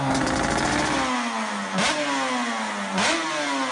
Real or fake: real